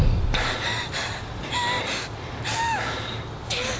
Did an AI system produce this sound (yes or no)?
no